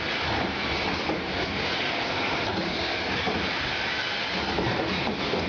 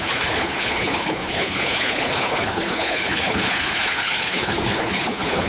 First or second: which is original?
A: first